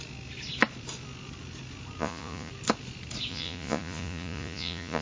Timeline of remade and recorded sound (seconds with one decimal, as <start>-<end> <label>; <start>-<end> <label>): 0.0-2.0 recorded; 2.0-2.5 remade; 2.5-3.3 recorded; 3.3-5.0 remade